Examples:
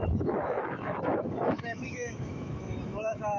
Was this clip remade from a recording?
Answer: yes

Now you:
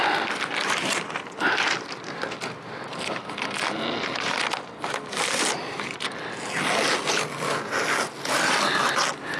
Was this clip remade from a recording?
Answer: no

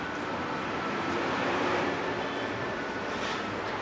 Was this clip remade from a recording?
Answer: no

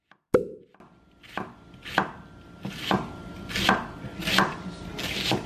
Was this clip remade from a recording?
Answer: no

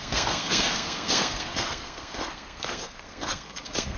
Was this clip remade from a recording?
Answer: yes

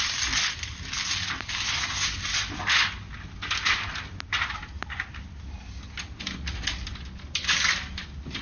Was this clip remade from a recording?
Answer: no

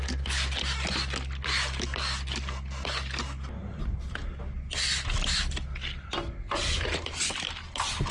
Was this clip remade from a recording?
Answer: no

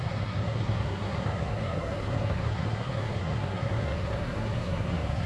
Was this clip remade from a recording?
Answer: yes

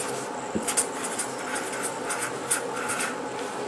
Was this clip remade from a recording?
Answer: no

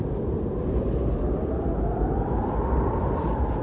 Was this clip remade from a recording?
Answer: no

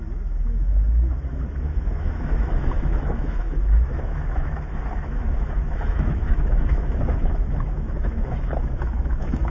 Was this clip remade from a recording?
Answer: yes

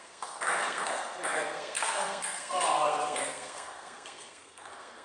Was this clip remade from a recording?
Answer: yes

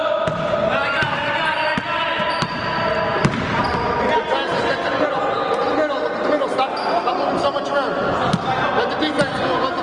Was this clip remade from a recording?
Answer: no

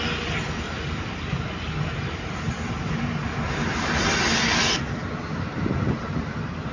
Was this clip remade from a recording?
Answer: no